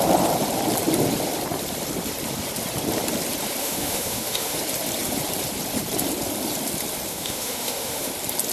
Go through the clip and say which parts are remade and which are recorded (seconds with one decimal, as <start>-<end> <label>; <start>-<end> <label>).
0.0-3.6 recorded; 3.6-4.6 remade; 4.6-7.1 recorded; 7.1-8.1 remade; 8.1-8.5 recorded